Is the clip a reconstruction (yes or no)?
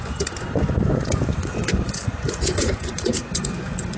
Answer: yes